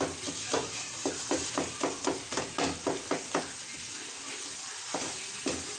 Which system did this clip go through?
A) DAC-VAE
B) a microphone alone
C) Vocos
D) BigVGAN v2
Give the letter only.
B